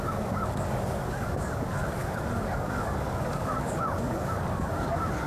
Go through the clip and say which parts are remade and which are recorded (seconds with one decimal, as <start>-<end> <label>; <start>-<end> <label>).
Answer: 0.0-5.3 remade